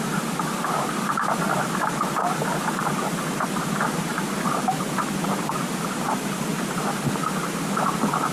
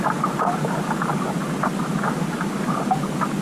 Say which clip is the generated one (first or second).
first